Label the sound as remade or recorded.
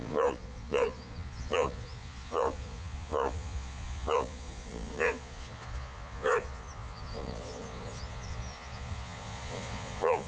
remade